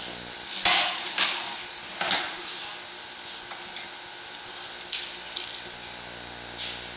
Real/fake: real